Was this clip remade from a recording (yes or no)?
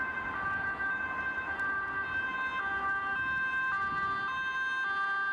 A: no